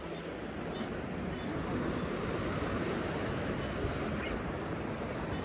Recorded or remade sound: recorded